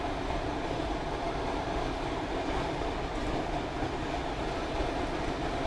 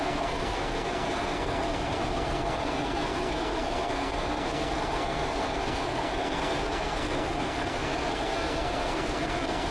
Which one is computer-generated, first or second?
second